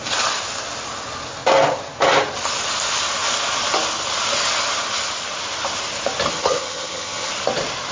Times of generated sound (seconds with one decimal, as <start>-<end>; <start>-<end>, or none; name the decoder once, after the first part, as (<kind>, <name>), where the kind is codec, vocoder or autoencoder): 6.3-7.3 (vocoder, HiFi-GAN)